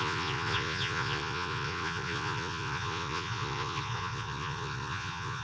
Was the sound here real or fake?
fake